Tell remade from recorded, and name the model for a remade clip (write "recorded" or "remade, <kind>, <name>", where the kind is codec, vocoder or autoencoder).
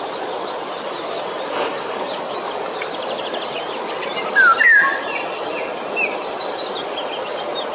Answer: recorded